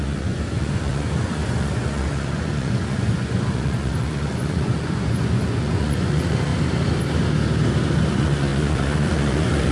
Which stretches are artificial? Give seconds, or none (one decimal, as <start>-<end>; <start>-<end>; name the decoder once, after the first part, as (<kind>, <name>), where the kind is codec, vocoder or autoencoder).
0.0-6.5 (vocoder, Vocos); 8.1-9.7